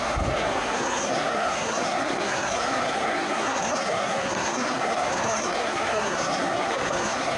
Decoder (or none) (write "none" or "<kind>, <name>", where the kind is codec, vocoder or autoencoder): codec, SNAC